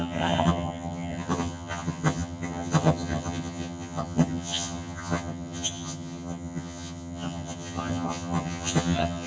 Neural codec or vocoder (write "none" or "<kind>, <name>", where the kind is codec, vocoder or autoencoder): vocoder, HiFi-GAN